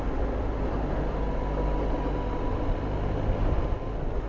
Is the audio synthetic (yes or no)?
no